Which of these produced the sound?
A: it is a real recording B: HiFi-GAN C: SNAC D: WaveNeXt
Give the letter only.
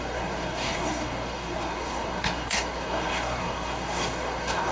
C